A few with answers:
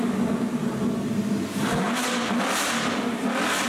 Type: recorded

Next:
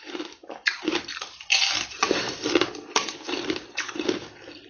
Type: remade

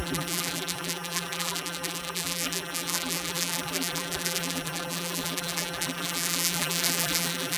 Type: remade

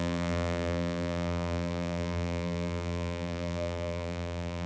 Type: remade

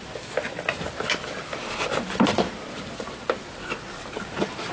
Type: recorded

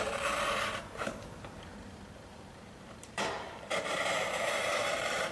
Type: remade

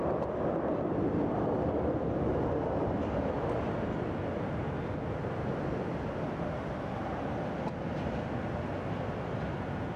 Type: recorded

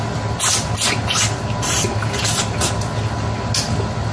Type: recorded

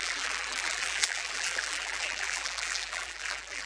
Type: remade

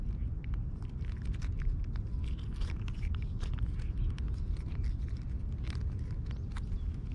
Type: recorded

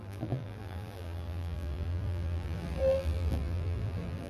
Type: remade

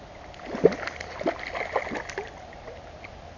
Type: recorded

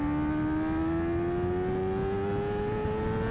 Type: recorded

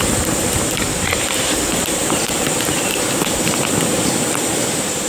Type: remade